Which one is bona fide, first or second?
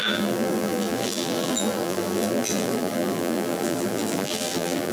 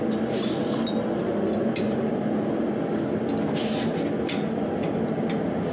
second